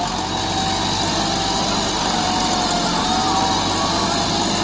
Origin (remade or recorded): recorded